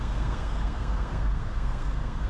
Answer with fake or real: fake